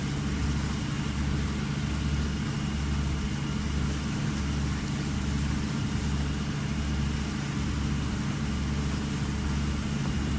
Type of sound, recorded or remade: recorded